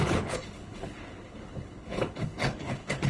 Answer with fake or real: fake